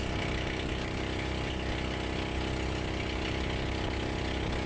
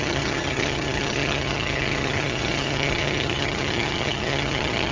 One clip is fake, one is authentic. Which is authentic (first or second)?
first